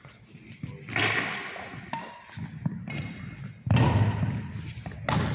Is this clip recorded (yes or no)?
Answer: yes